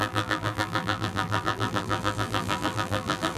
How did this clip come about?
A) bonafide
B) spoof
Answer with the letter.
B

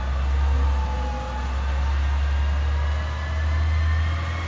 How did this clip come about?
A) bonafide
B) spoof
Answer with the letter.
A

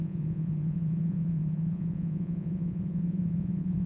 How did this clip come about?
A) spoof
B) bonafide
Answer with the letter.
A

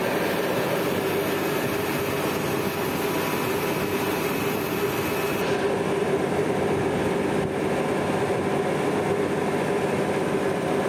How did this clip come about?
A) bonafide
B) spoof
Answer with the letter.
A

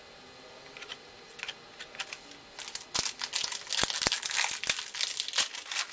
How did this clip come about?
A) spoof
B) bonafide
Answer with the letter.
B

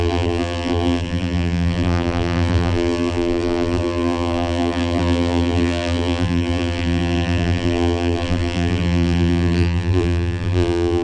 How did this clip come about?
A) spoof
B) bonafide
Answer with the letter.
A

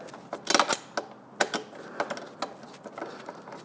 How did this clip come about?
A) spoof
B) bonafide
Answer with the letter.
B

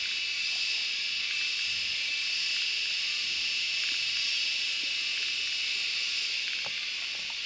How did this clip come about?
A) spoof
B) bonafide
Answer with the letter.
B